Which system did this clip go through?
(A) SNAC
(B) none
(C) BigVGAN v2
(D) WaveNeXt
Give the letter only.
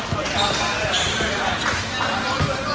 B